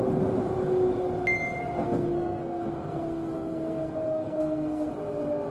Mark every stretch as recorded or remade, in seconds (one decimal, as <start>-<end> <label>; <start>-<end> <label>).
0.0-1.6 recorded; 1.6-4.9 remade; 4.9-5.5 recorded